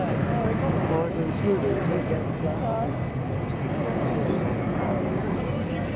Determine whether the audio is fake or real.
real